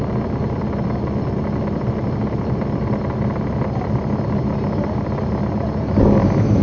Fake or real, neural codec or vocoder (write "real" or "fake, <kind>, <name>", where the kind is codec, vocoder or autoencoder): real